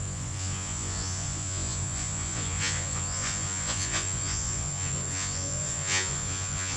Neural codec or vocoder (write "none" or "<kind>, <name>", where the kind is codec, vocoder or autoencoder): vocoder, Vocos